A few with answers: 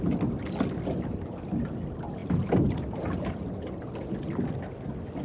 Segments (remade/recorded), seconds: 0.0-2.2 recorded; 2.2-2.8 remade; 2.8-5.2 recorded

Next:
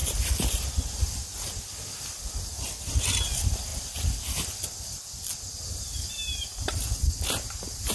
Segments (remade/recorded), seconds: 0.0-7.9 recorded

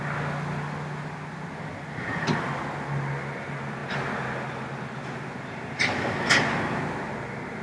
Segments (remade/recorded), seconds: 0.0-7.6 recorded

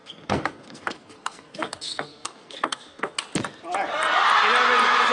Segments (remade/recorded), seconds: 0.0-3.1 remade; 3.1-5.1 recorded

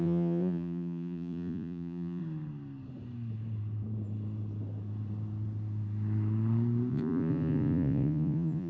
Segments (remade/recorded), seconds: 0.0-2.2 remade; 2.2-6.9 recorded; 6.9-8.7 remade

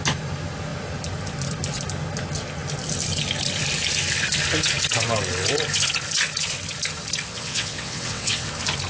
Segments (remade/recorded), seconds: 0.0-7.3 recorded; 7.3-8.5 remade; 8.5-8.9 recorded

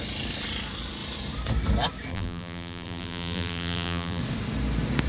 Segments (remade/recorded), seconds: 0.0-2.1 recorded; 2.1-4.2 remade; 4.2-5.1 recorded

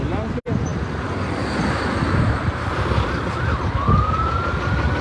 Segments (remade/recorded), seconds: 0.0-5.0 recorded